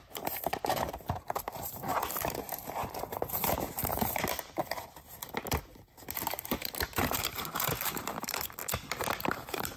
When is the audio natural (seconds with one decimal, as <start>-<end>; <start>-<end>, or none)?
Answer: 4.6-6.4; 8.6-9.2